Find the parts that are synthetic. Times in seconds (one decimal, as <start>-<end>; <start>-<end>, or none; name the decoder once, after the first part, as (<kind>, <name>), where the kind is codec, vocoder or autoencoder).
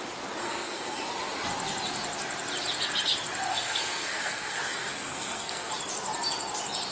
0.4-1.0 (codec, SNAC); 3.5-5.7